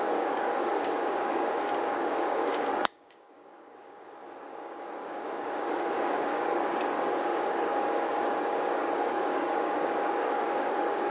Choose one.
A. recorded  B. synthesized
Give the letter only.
B